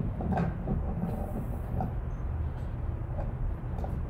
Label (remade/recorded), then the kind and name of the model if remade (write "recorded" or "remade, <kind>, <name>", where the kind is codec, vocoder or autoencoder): recorded